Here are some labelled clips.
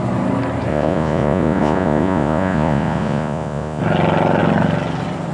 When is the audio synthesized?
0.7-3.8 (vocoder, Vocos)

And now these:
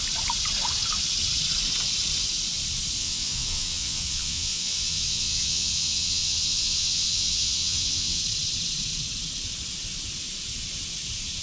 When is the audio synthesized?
3.0-8.2 (vocoder, WaveNeXt)

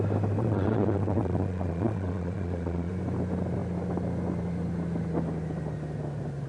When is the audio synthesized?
0.4-2.9 (vocoder, Vocos)

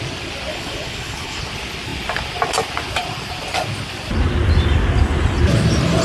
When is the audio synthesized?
0.5-1.4 (codec, HILCodec)

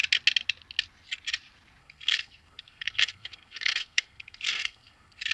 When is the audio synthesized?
1.8-5.3 (codec, SNAC)

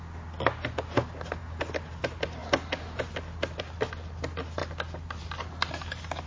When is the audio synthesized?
none

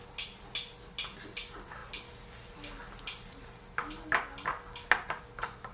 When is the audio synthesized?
none

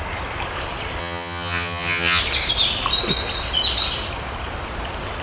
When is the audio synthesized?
1.0-2.2 (vocoder, HiFi-GAN)